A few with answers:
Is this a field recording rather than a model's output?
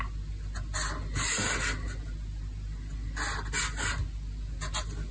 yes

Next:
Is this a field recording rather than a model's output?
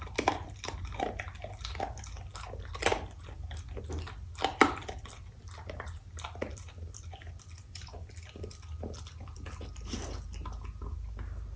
yes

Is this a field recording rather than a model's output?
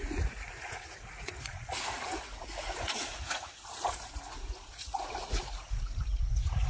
no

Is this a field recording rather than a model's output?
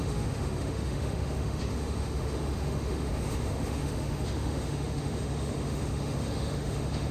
no